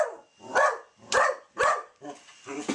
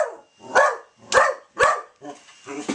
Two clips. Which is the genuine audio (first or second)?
second